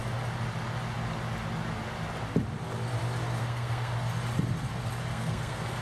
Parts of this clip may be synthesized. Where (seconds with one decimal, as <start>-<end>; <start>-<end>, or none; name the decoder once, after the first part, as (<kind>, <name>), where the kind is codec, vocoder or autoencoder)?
3.4-3.9 (codec, SNAC); 5.1-5.8